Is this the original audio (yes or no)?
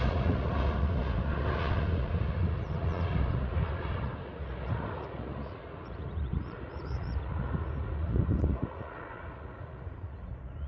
no